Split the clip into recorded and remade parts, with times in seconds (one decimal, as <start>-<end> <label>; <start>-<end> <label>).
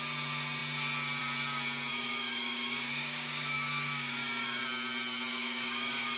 0.0-1.9 recorded; 1.9-4.6 remade; 4.6-5.3 recorded; 5.3-6.2 remade